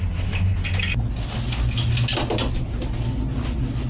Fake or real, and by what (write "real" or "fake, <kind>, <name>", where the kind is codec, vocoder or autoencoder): real